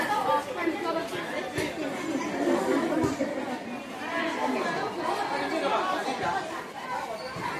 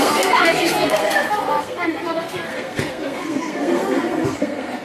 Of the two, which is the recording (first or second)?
first